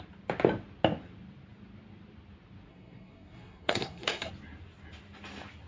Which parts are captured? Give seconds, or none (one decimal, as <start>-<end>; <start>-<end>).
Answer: 0.0-2.7; 4.3-5.7